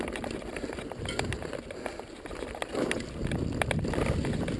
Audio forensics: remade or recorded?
recorded